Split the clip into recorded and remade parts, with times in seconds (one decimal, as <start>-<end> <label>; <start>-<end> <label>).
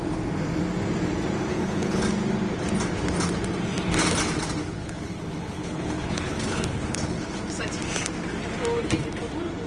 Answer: 0.0-1.5 recorded; 1.5-2.0 remade; 2.0-4.6 recorded; 4.6-7.4 remade; 7.4-9.7 recorded